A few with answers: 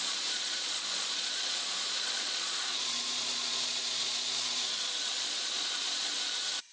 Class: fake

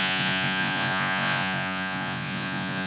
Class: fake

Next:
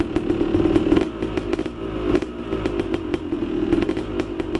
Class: real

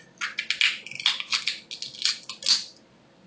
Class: real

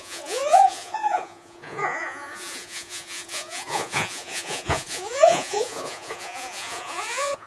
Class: fake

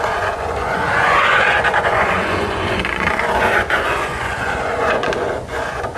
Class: fake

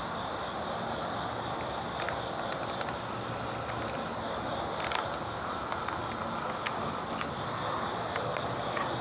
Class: real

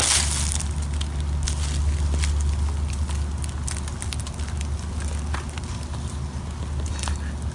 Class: real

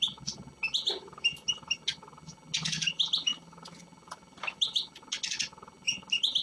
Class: real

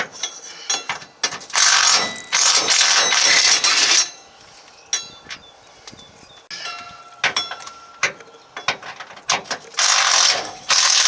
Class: real